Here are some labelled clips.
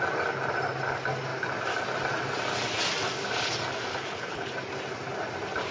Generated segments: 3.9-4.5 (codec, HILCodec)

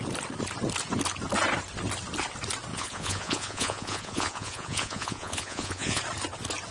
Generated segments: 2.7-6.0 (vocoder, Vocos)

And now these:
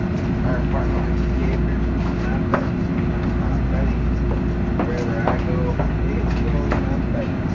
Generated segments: none

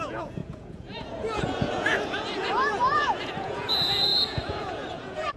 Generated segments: 0.0-5.4 (vocoder, Vocos)

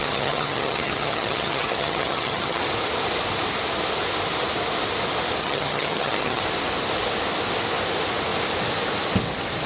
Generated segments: 0.0-2.6 (vocoder, HiFi-GAN); 5.4-6.4

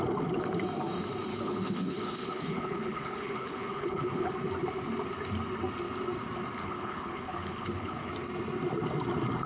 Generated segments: 1.3-4.3 (codec, HILCodec); 6.6-8.1

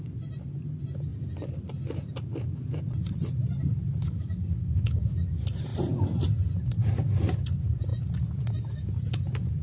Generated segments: 4.0-5.1 (codec, DAC)